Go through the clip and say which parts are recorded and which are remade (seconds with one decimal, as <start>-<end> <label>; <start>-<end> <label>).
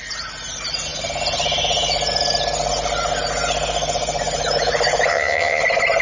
0.0-5.1 recorded; 5.1-5.6 remade; 5.6-6.0 recorded